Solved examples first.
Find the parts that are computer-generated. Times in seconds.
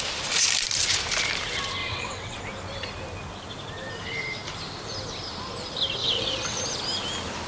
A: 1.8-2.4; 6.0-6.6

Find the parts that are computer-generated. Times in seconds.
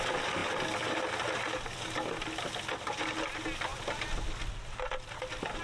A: none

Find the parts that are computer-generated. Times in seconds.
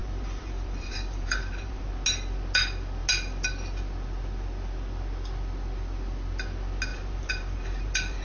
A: 0.0-1.9; 6.9-8.2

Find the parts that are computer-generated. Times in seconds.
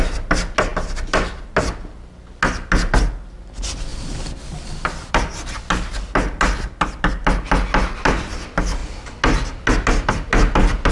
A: 0.7-1.3; 3.9-5.6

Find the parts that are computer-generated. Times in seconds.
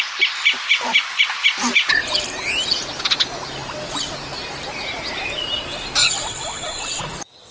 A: 6.0-7.0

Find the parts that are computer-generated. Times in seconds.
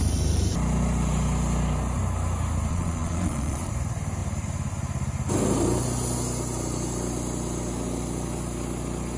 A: 2.7-3.7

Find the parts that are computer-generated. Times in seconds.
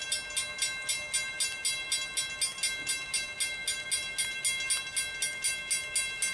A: none